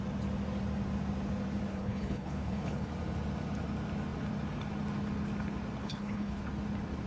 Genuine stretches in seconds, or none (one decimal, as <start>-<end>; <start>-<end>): 0.0-1.7; 2.9-5.8; 6.4-7.1